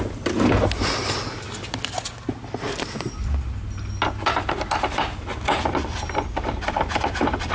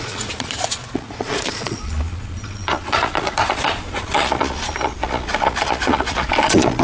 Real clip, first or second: first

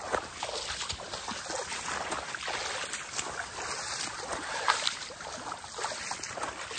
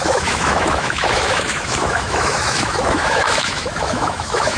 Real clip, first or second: first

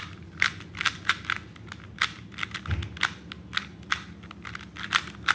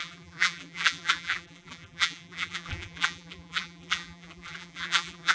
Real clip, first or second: first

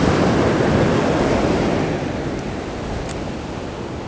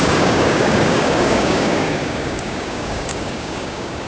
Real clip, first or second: first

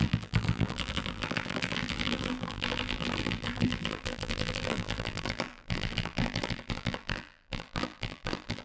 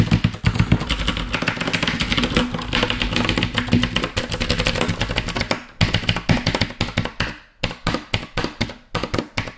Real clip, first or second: second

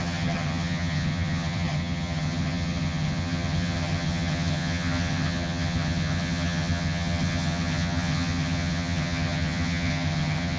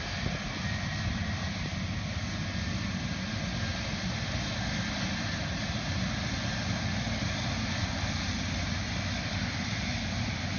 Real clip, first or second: second